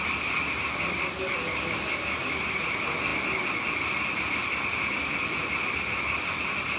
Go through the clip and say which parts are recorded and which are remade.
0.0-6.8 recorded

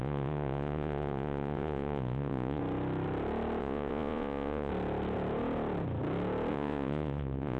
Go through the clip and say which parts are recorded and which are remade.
0.0-2.6 remade; 2.6-3.6 recorded; 3.6-4.7 remade; 4.7-6.5 recorded; 6.5-7.6 remade

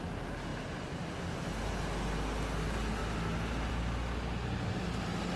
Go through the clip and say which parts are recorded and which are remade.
0.0-0.5 recorded; 0.5-1.2 remade; 1.2-5.4 recorded

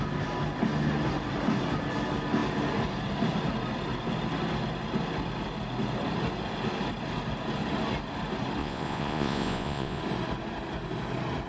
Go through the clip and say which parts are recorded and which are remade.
0.0-8.6 recorded; 8.6-10.0 remade; 10.0-11.5 recorded

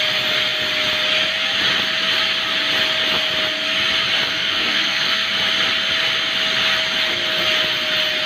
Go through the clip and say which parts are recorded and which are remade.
0.0-4.3 recorded; 4.3-5.3 remade; 5.3-8.3 recorded